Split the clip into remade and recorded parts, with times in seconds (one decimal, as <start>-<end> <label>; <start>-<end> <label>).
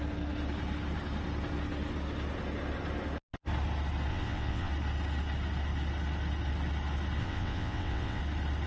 0.0-4.1 recorded; 4.1-4.7 remade; 4.7-7.2 recorded; 7.2-8.2 remade; 8.2-8.7 recorded